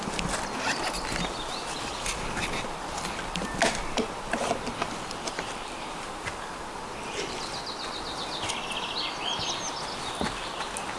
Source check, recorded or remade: recorded